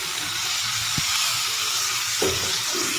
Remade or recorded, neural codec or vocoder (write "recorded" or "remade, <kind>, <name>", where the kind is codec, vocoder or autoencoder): remade, codec, DAC